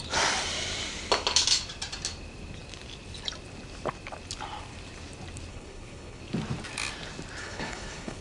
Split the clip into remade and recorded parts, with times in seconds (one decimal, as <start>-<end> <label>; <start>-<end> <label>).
0.0-5.5 recorded; 5.5-6.2 remade; 6.2-7.4 recorded; 7.4-8.2 remade